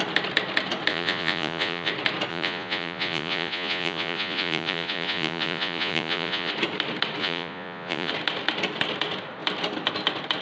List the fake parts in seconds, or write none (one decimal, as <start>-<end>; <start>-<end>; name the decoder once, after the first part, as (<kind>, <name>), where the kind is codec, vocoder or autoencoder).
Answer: 0.9-1.9 (vocoder, Vocos); 2.3-6.5; 7.2-8.1